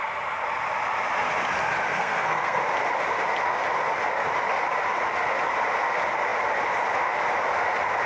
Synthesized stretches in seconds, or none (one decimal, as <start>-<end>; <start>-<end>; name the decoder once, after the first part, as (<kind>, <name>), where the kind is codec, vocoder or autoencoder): 1.9-2.6 (codec, SNAC)